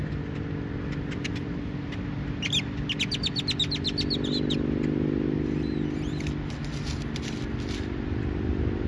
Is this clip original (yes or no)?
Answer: yes